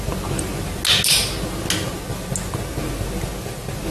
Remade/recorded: recorded